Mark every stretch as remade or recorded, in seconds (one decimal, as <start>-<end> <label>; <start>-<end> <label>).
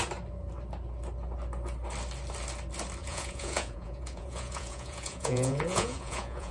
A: 0.0-3.0 recorded; 3.0-6.5 remade